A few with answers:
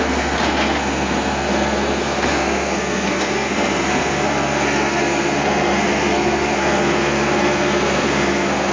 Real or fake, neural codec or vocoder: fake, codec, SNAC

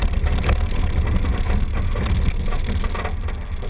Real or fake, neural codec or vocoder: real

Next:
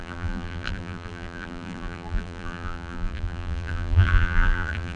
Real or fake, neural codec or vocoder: fake, vocoder, BigVGAN v2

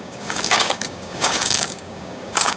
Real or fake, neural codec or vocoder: fake, codec, DAC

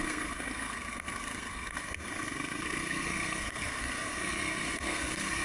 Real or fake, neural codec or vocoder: fake, codec, SNAC